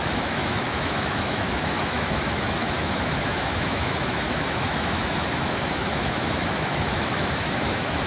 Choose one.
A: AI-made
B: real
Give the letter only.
A